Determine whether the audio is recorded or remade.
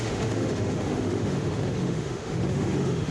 remade